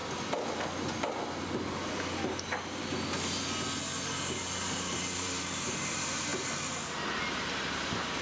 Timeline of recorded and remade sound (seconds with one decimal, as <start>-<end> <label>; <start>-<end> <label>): 0.0-4.7 recorded; 4.7-6.3 remade; 6.3-7.2 recorded; 7.2-8.2 remade